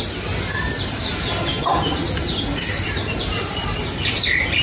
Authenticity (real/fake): real